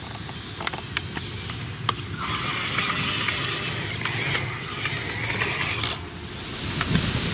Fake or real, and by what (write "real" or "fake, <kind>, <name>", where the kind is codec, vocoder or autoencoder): real